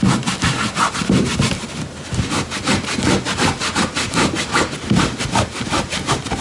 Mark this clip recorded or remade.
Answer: recorded